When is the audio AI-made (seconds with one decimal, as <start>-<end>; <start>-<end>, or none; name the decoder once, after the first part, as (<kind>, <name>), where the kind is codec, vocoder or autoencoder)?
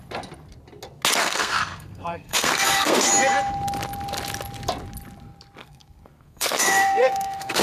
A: 1.2-3.1 (codec, SNAC); 5.6-7.6